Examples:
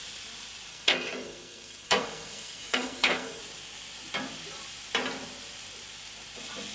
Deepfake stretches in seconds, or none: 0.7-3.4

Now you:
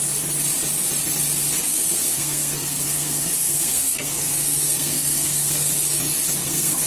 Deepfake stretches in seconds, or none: 1.7-5.7; 6.4-6.9

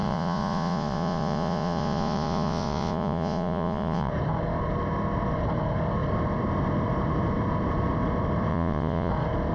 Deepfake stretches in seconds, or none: 0.0-4.1; 8.5-9.1

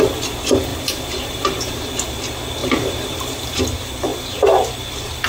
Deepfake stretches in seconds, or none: 0.7-2.2; 2.6-3.6; 4.1-4.7

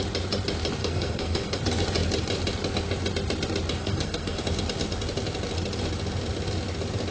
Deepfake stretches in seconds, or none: 0.8-1.6; 3.8-4.4

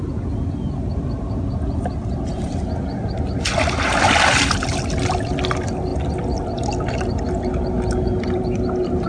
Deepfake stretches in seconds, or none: none